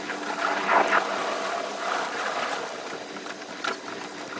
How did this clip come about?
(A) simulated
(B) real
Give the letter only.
B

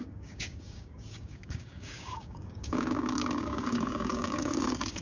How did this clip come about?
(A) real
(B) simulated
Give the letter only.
B